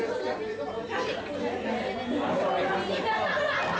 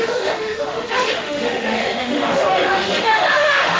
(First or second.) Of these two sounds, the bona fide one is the first